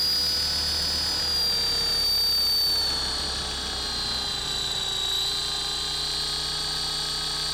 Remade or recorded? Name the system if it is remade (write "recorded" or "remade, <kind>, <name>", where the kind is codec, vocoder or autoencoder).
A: recorded